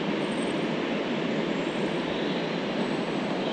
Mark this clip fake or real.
real